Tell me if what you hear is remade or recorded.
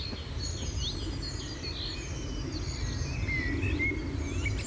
recorded